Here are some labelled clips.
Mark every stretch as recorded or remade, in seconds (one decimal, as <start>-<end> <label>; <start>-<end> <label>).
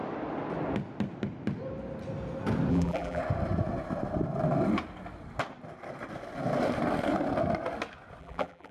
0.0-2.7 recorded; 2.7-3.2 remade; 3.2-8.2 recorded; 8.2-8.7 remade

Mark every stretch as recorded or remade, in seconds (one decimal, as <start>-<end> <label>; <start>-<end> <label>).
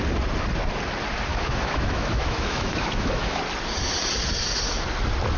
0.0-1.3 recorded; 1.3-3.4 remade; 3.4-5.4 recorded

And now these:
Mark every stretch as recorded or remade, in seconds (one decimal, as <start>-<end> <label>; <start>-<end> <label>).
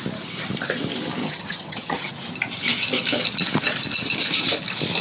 0.0-1.2 recorded; 1.2-2.1 remade; 2.1-5.0 recorded